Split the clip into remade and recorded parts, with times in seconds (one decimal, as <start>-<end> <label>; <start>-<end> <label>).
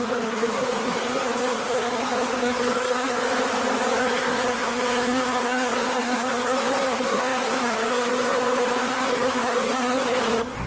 0.0-3.2 remade; 3.2-4.0 recorded; 4.0-10.7 remade